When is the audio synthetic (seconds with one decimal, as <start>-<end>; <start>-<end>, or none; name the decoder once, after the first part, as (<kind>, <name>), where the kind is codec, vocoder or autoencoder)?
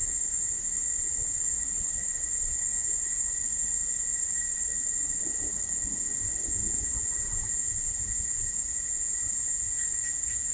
2.7-3.2 (vocoder, Vocos); 6.6-10.5